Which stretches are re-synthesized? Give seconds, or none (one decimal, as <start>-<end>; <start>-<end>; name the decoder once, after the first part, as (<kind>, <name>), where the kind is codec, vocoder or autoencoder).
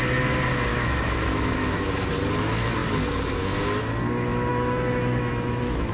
0.7-1.9 (autoencoder, DAC-VAE); 4.5-5.9